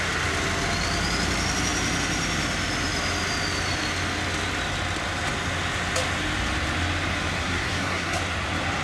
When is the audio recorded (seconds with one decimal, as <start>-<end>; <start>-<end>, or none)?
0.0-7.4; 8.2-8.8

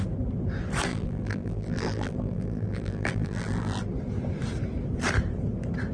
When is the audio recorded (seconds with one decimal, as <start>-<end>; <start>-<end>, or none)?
0.0-0.9; 3.8-5.9

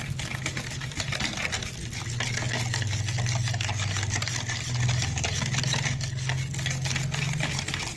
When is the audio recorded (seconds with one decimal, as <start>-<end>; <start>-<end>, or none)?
0.0-8.0